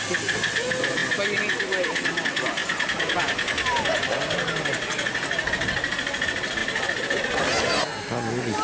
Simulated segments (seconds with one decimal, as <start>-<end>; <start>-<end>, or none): 6.6-7.8